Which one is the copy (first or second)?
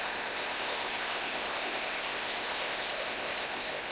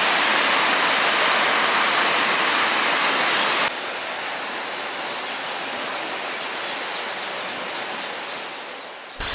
first